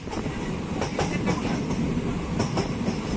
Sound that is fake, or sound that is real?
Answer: real